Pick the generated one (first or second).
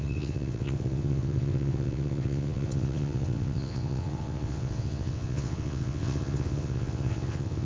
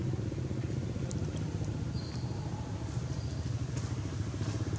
first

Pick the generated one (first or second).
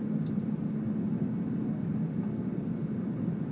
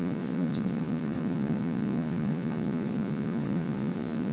second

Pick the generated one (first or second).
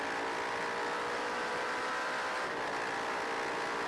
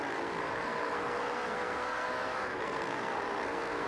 second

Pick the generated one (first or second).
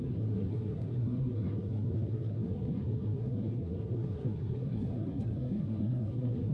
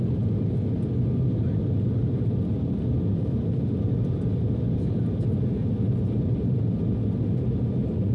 first